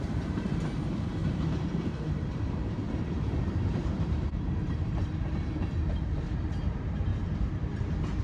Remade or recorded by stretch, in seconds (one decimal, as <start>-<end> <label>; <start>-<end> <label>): 0.0-7.1 remade; 7.1-8.2 recorded